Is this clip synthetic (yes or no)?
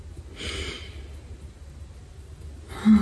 no